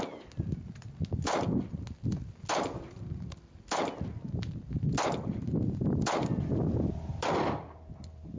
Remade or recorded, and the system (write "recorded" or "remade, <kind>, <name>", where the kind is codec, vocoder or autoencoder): recorded